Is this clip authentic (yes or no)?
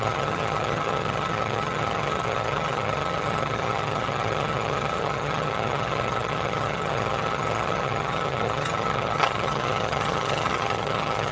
no